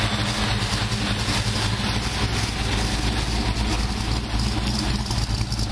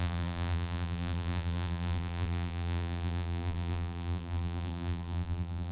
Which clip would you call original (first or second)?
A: first